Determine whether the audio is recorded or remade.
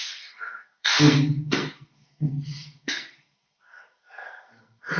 remade